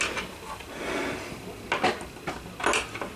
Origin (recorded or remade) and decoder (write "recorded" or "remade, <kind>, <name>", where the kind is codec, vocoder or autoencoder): recorded